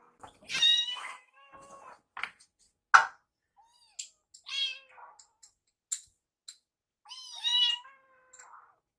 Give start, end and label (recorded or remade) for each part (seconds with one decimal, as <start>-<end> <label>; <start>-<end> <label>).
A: 0.0-1.0 recorded; 1.0-1.5 remade; 1.5-9.0 recorded